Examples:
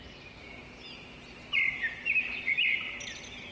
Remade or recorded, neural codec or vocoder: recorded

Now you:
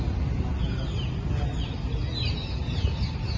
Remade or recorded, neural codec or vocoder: recorded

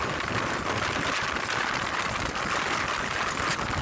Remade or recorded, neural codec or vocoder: recorded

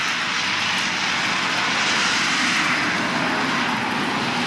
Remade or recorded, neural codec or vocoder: recorded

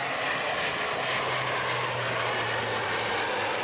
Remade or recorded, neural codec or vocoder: recorded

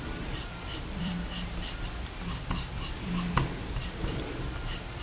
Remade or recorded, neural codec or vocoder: remade, vocoder, BigVGAN v2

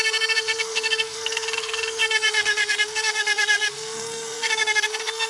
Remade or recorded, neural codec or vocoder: remade, codec, SNAC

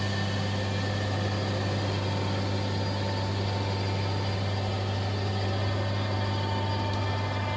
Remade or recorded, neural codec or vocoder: recorded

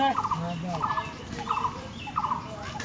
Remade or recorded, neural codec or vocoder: recorded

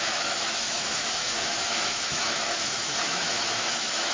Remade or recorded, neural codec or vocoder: remade, autoencoder, DAC-VAE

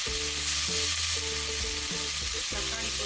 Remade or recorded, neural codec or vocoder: recorded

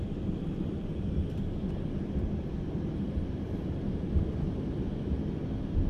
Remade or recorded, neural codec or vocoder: recorded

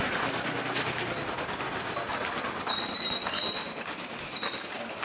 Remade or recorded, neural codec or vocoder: recorded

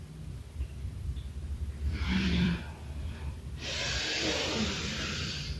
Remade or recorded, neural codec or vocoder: remade, vocoder, BigVGAN v2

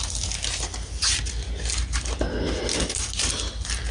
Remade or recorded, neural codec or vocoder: recorded